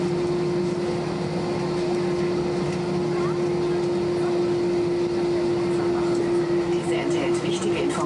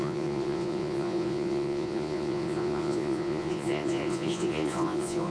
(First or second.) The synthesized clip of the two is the second